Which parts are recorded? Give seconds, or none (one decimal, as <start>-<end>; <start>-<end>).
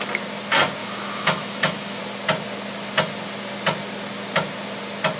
0.0-0.8; 2.0-5.2